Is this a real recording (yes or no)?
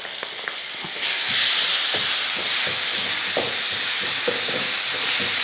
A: yes